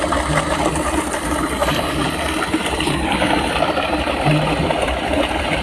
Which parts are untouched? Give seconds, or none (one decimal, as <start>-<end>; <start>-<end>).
0.0-1.6; 5.0-5.6